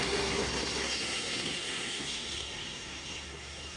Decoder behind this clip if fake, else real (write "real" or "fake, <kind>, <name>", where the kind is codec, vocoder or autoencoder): fake, codec, SNAC